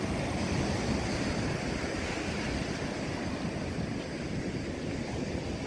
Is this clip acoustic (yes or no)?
yes